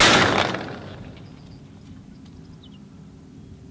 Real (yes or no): yes